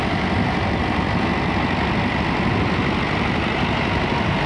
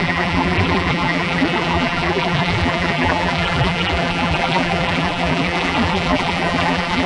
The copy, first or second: second